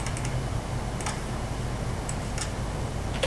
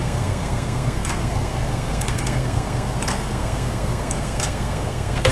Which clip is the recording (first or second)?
first